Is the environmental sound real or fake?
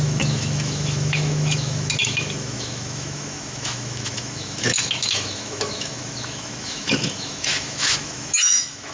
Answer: fake